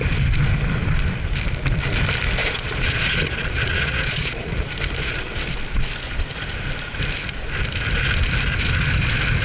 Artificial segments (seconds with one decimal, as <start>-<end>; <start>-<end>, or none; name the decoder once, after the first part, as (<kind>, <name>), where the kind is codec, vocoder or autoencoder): 2.4-4.7 (vocoder, Vocos)